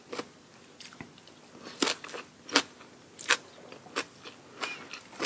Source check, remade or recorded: recorded